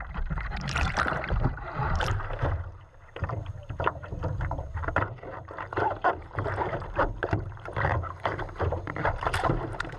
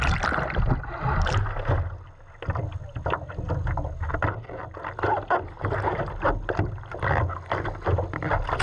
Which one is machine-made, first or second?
first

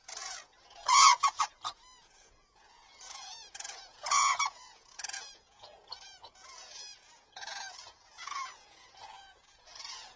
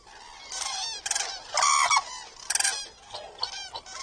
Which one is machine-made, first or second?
first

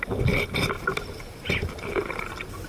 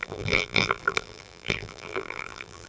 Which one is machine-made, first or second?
second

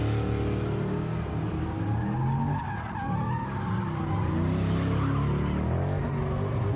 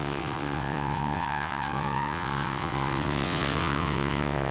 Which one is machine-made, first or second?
second